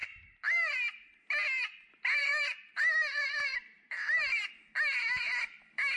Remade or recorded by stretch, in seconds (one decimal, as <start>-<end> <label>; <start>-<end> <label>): 0.0-1.2 remade; 1.2-2.2 recorded; 2.2-4.5 remade; 4.5-6.0 recorded